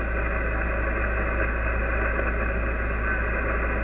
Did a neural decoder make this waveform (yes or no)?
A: no